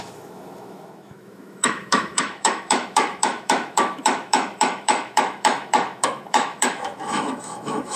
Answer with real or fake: fake